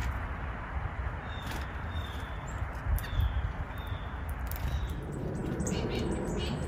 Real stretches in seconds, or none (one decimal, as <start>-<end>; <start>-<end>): 0.0-5.4

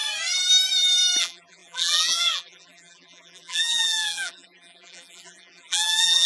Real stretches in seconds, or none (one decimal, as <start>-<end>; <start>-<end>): 0.0-1.2

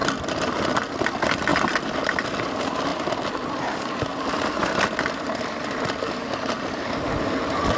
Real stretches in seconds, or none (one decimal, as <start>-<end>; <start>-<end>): 0.0-1.5; 2.3-2.9; 3.8-4.6; 6.3-7.8

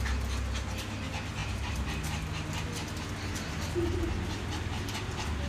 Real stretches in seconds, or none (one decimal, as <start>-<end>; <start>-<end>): 0.0-5.5